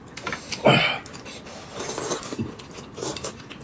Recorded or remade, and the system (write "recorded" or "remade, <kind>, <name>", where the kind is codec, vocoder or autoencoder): recorded